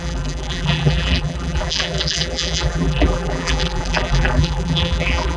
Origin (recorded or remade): remade